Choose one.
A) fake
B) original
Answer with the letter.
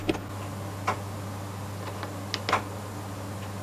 B